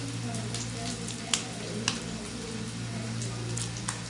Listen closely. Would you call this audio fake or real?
real